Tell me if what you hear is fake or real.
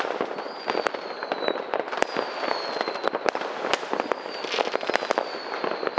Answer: real